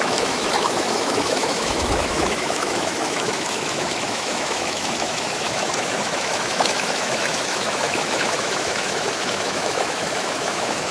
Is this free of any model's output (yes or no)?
no